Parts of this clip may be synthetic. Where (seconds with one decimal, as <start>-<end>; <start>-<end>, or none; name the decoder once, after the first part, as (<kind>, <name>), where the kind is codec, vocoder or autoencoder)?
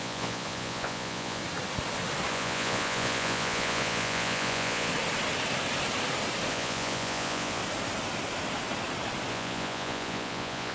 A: 0.0-1.4 (vocoder, Vocos); 2.3-4.9; 6.5-7.6; 9.3-10.7